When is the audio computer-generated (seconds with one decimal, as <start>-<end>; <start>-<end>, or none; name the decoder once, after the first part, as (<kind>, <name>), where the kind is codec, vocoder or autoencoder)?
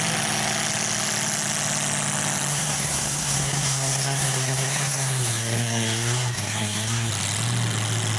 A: 2.5-7.1 (codec, SNAC)